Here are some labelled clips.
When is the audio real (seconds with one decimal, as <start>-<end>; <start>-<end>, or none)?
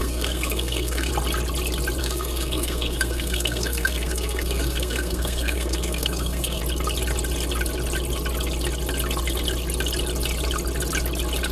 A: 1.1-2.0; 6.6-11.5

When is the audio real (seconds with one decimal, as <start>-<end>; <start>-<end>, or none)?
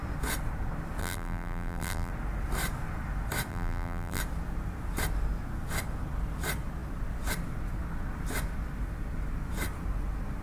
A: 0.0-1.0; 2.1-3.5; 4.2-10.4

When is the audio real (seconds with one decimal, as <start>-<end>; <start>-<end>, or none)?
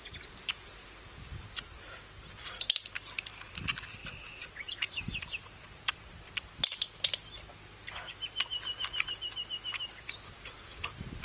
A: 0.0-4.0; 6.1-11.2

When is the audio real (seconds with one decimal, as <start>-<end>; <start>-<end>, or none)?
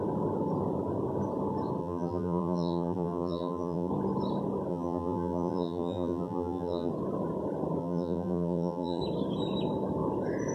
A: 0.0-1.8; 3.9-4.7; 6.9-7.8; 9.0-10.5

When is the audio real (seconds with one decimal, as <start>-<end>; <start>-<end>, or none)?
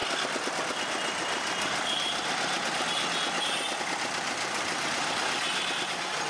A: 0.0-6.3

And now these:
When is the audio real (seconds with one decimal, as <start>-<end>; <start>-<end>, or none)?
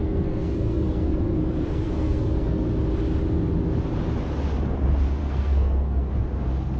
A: 2.8-5.2; 6.1-6.8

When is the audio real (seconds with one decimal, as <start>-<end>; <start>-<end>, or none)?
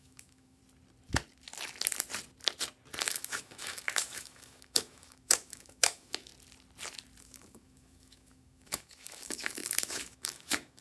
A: 0.6-3.0; 6.3-7.2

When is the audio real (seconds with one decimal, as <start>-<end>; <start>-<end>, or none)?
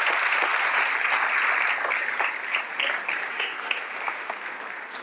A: 0.0-3.3; 3.8-5.0